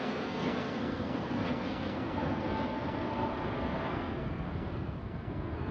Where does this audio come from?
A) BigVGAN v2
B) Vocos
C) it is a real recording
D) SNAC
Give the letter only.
D